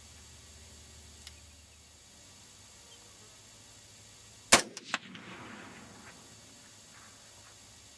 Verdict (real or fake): real